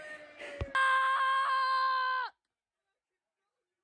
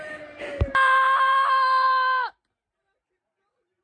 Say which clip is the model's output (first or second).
second